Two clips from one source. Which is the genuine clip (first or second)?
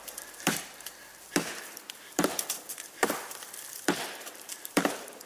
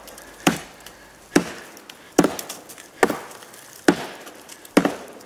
second